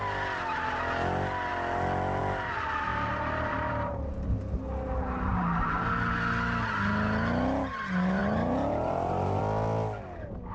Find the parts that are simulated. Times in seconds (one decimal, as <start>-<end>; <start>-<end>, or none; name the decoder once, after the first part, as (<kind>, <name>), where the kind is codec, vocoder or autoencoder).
2.9-4.1 (vocoder, BigVGAN v2); 5.3-5.9; 8.2-9.4